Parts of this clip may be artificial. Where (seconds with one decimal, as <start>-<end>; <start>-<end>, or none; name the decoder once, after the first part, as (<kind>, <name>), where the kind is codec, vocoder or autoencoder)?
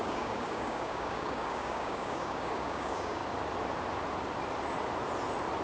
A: 0.0-3.2 (codec, DAC)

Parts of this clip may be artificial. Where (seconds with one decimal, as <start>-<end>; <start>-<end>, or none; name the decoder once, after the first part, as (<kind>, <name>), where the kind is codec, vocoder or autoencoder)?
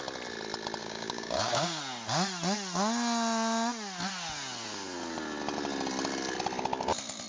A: 0.8-1.8 (codec, DAC)